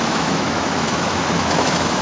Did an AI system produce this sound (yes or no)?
yes